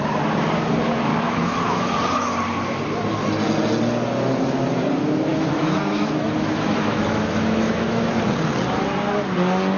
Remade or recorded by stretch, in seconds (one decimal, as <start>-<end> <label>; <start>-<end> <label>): 0.0-1.1 recorded; 1.1-1.8 remade; 1.8-5.3 recorded; 5.3-8.2 remade; 8.2-9.8 recorded